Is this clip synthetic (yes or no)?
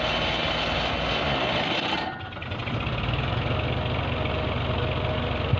no